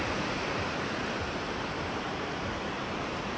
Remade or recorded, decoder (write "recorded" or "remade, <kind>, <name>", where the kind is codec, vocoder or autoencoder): remade, vocoder, BigVGAN v2